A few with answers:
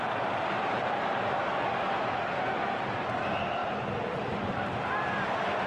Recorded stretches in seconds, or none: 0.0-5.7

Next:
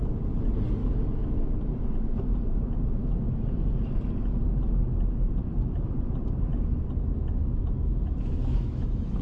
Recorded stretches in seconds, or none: 0.0-0.8; 1.9-3.0; 3.5-7.4

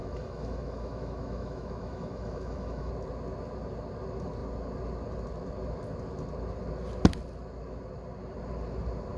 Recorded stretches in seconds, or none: 2.9-9.2

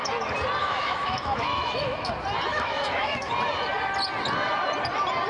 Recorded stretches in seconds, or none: 0.0-0.6; 2.1-2.5; 3.3-5.3

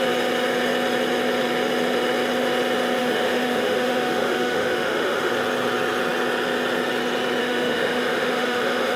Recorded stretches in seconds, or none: 0.0-3.0; 5.3-7.4

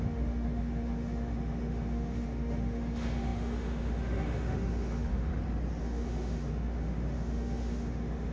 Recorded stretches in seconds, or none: 5.3-5.8

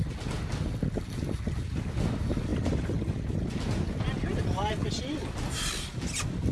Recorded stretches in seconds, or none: 0.0-6.5

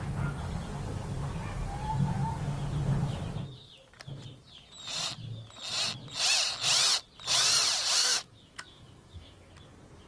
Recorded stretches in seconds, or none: 0.0-8.0; 9.5-10.1